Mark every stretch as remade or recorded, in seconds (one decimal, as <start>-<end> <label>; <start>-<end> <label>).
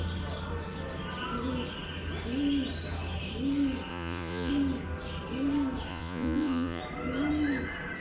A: 0.0-3.9 recorded; 3.9-4.5 remade; 4.5-5.9 recorded; 5.9-6.8 remade; 6.8-8.0 recorded